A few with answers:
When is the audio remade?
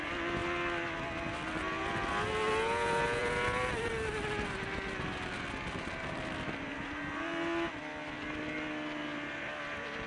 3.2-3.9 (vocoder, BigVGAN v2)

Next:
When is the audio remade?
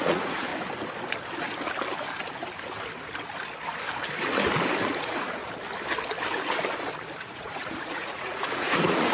0.0-0.5 (vocoder, Vocos); 4.8-5.4; 7.2-9.1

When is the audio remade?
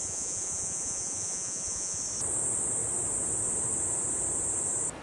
0.0-2.0 (vocoder, Vocos)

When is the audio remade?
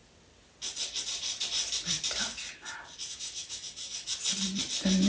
3.1-4.1 (autoencoder, DAC-VAE)